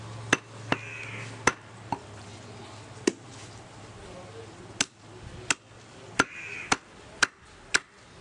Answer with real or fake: real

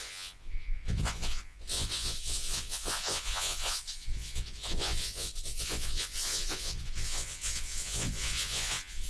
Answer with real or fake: fake